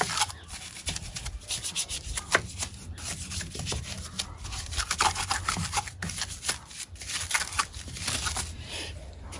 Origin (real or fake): real